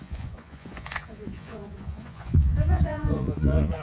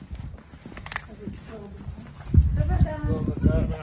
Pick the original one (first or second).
second